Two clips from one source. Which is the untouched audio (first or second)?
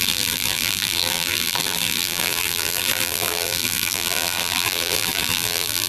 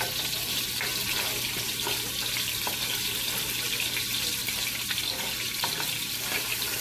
second